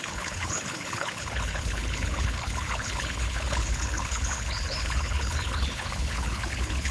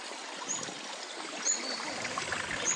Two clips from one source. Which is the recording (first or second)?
second